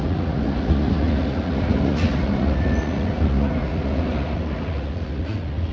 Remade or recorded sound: remade